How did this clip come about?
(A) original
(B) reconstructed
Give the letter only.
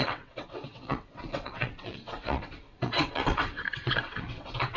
B